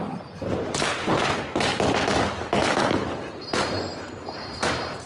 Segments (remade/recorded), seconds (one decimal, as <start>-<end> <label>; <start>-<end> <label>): 0.0-1.7 remade; 1.7-3.9 recorded; 3.9-5.1 remade